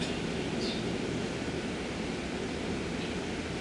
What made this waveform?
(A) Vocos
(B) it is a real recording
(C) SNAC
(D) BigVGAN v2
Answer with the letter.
B